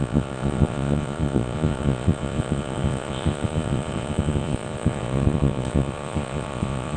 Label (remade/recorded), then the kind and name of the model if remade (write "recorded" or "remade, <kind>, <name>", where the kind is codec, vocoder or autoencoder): remade, vocoder, Vocos